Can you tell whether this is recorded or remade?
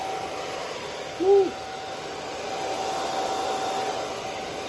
recorded